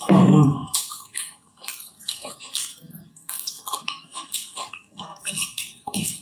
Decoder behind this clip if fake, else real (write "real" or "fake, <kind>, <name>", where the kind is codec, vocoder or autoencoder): fake, codec, SNAC